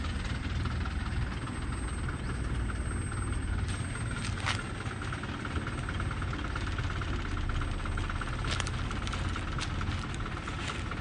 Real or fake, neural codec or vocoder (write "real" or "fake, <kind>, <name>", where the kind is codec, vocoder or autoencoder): real